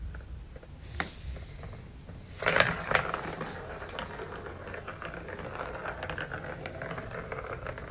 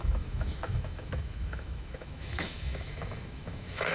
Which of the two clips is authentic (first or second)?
first